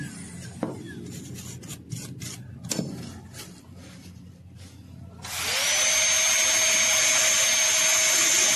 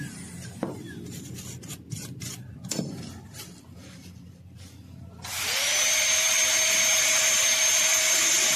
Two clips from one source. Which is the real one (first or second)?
first